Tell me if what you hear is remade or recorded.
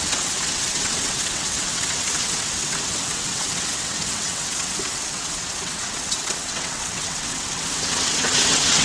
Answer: remade